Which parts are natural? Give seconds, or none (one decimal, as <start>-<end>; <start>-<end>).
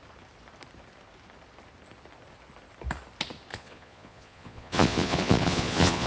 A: 0.0-3.5